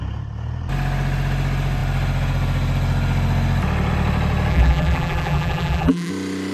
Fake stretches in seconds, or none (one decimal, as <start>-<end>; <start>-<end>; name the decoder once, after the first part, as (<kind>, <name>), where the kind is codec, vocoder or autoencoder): 4.5-6.1 (vocoder, BigVGAN v2)